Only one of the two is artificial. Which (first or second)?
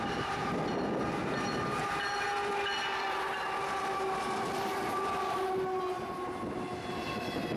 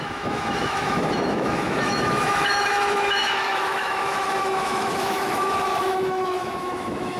second